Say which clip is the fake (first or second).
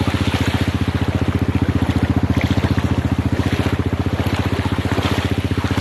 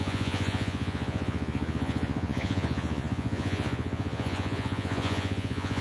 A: second